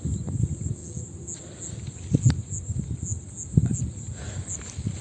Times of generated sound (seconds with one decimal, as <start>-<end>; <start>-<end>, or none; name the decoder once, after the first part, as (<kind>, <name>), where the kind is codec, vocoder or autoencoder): none